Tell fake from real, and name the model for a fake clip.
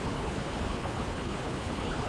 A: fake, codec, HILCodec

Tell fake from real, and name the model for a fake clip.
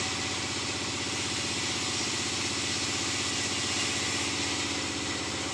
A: real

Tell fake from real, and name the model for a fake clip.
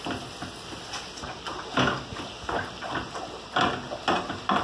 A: real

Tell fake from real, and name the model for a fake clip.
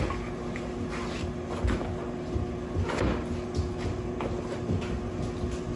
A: real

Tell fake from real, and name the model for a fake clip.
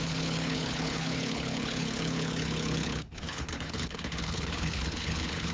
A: fake, codec, HILCodec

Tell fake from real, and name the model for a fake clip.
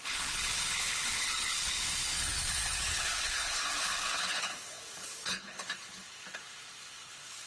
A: fake, codec, HILCodec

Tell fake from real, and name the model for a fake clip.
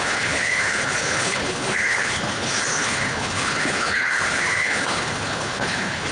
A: fake, codec, HILCodec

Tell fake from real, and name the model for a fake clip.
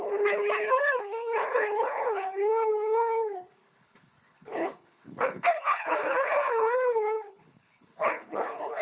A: fake, codec, HILCodec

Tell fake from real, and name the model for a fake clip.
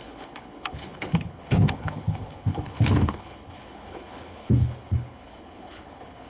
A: fake, codec, HILCodec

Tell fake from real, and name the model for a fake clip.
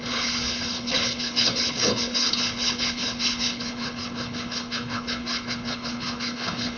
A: fake, codec, HILCodec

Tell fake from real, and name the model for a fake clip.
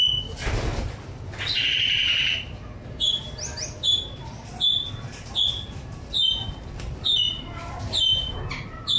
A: real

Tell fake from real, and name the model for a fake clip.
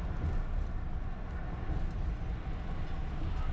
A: real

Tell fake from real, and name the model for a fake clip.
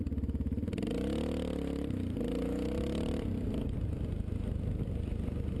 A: real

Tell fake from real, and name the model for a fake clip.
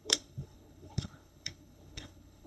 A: fake, codec, HILCodec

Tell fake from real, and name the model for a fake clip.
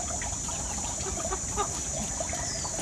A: real